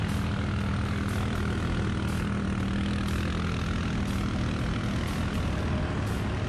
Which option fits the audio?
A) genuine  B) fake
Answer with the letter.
A